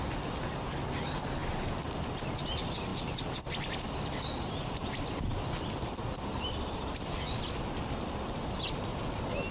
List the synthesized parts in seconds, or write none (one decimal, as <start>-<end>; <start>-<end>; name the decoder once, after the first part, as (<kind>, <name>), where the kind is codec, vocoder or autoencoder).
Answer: none